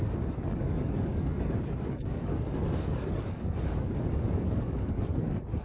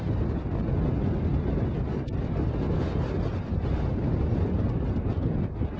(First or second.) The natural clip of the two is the second